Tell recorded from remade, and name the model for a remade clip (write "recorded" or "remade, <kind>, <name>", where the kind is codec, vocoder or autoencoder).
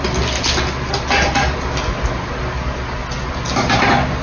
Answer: recorded